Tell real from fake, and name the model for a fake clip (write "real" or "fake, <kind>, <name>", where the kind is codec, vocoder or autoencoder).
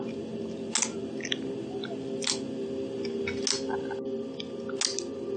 real